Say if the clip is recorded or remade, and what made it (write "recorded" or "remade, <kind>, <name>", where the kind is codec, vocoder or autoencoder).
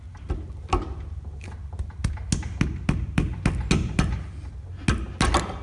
recorded